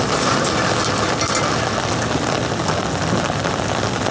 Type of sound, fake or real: real